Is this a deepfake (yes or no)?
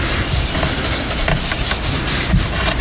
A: no